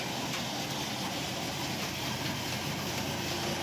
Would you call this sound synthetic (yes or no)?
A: no